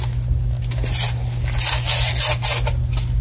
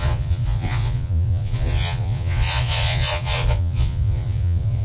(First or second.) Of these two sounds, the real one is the first